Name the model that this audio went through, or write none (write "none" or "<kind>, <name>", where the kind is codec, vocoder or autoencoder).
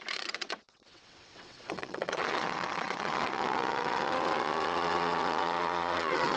vocoder, WaveNeXt